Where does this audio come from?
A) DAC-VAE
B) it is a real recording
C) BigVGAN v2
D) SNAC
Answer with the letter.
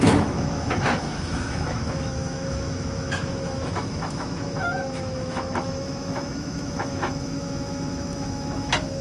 A